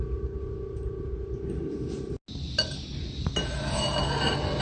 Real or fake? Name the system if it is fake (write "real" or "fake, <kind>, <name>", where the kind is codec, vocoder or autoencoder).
real